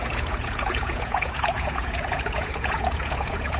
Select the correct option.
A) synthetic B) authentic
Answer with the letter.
A